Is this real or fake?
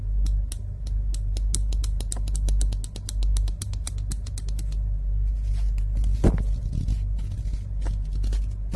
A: real